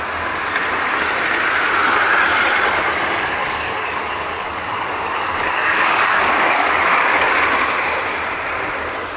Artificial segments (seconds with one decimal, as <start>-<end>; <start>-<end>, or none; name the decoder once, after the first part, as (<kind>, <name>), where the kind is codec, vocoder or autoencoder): 3.4-7.4 (codec, DAC)